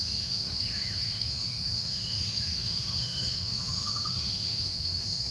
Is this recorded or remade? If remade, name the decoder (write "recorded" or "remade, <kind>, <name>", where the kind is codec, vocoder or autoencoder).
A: remade, autoencoder, DAC-VAE